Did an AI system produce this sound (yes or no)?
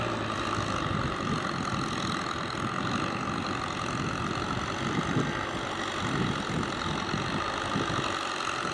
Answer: no